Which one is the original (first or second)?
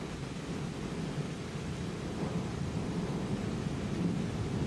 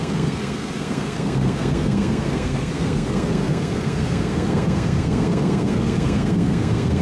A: first